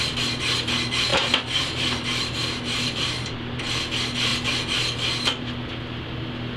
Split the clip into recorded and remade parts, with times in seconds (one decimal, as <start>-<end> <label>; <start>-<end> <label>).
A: 0.0-1.1 recorded; 1.1-3.6 remade; 3.6-6.6 recorded